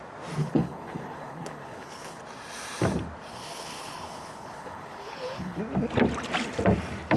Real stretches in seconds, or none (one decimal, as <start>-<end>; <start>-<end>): 0.0-0.4; 2.2-3.3; 5.6-7.2